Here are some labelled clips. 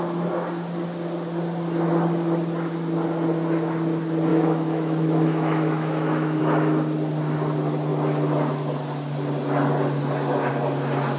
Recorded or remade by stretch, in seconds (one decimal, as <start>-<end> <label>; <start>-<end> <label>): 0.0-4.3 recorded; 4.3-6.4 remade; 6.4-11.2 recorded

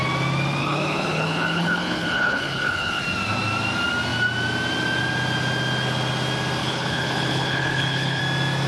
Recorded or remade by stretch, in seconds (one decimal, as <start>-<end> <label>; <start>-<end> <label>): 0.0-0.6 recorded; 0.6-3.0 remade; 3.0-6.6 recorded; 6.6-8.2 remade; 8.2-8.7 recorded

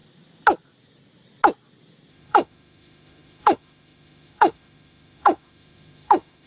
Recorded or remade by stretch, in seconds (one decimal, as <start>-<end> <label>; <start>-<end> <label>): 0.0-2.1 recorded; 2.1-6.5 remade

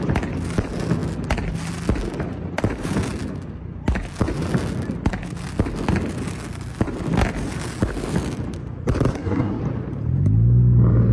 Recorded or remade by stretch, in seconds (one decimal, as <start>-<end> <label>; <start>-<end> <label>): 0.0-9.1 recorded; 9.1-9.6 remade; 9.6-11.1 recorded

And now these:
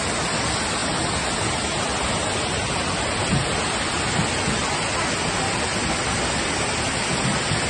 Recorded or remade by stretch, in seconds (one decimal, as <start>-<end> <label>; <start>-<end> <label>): 0.0-7.7 recorded

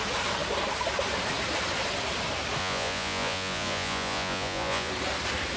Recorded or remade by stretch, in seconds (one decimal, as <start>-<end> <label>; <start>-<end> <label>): 0.0-2.6 recorded; 2.6-4.9 remade; 4.9-5.6 recorded

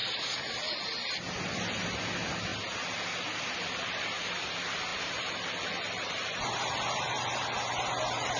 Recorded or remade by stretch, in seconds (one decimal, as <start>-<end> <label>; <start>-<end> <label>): 0.0-1.1 remade; 1.1-4.9 recorded; 4.9-6.1 remade; 6.1-8.4 recorded